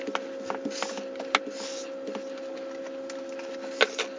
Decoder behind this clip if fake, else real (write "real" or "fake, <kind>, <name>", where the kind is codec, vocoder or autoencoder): real